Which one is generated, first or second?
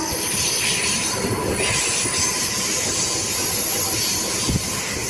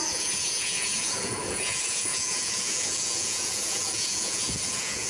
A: second